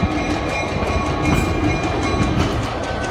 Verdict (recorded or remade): recorded